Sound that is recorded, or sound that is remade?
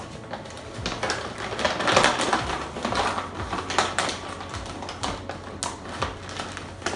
recorded